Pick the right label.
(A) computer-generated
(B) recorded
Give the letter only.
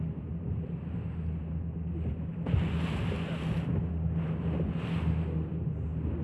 B